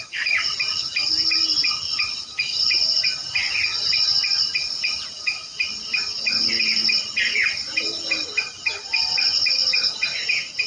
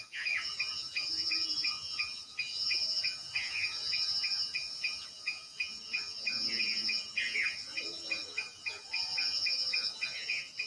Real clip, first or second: first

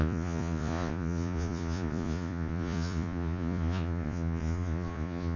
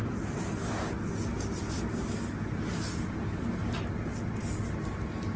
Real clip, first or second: second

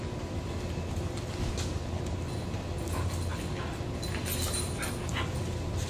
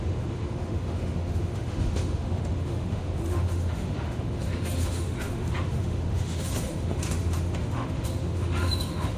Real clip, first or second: first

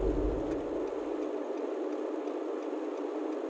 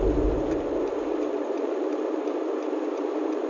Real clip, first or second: first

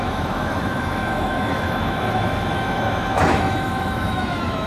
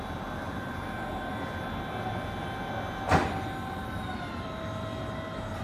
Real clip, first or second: second